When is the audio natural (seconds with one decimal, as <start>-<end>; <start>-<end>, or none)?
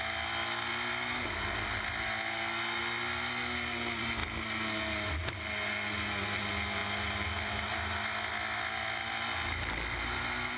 0.0-10.6